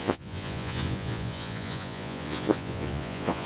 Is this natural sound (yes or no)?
no